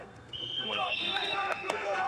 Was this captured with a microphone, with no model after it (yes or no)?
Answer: no